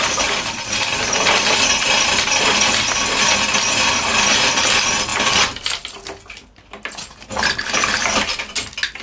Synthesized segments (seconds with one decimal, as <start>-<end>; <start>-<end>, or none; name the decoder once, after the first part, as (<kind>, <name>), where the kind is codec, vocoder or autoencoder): none